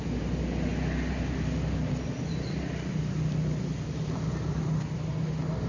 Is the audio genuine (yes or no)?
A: yes